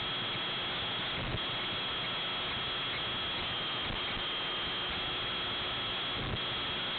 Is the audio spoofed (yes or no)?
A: no